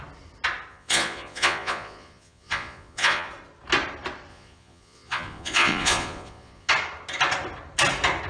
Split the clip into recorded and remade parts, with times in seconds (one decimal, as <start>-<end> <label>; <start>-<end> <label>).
0.0-0.7 recorded; 0.7-3.3 remade; 3.3-4.3 recorded; 4.3-6.7 remade; 6.7-8.3 recorded